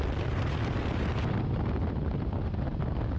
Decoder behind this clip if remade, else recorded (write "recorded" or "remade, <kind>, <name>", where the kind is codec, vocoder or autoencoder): recorded